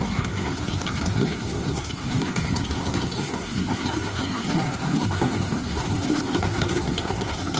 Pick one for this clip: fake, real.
fake